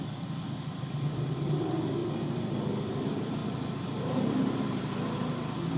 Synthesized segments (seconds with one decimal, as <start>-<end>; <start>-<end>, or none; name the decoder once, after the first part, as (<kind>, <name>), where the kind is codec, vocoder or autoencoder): 0.0-5.8 (vocoder, BigVGAN v2)